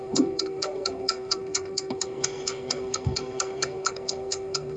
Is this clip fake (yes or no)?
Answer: yes